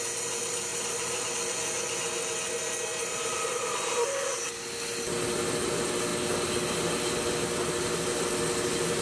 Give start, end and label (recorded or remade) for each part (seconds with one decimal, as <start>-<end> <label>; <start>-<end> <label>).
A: 0.0-0.7 recorded; 0.7-1.3 remade; 1.3-3.0 recorded; 3.0-3.9 remade; 3.9-9.0 recorded